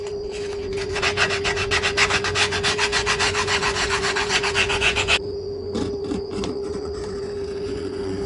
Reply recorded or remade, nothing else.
remade